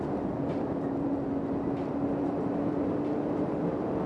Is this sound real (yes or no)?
yes